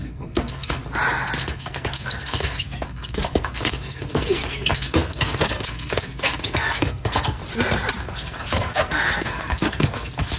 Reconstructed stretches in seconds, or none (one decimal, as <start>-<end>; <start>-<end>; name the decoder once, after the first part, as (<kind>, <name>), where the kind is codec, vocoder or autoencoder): 0.0-0.8 (codec, SNAC); 1.4-7.4; 8.0-10.4